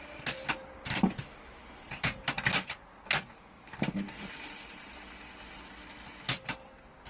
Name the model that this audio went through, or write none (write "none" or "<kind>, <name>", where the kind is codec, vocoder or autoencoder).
none